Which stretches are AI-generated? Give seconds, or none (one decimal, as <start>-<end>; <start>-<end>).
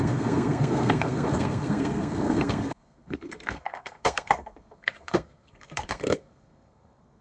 0.0-7.2